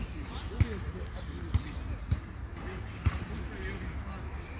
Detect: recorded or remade recorded